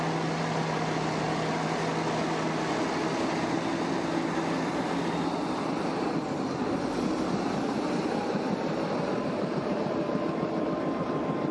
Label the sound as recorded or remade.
recorded